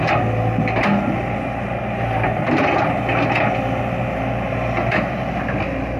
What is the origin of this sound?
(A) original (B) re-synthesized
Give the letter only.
A